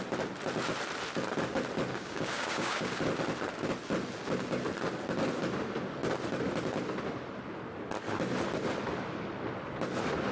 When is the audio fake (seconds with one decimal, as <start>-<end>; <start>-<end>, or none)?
1.9-3.0